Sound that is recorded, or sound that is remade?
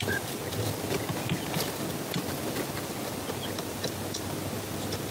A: recorded